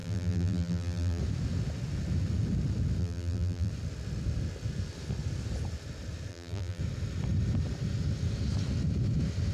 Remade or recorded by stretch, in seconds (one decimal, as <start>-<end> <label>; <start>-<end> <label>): 0.0-1.2 remade; 1.2-3.0 recorded; 3.0-3.7 remade; 3.7-6.3 recorded; 6.3-6.8 remade; 6.8-9.5 recorded